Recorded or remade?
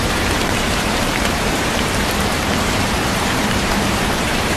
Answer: remade